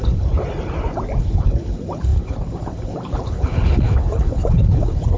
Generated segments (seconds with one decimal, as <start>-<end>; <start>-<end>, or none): 0.0-0.4; 1.2-5.2